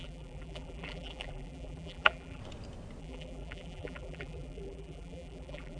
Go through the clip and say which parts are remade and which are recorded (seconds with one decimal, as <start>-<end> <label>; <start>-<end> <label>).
0.0-2.4 remade; 2.4-3.0 recorded; 3.0-5.8 remade